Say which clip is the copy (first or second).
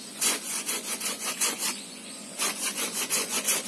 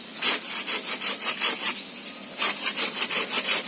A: first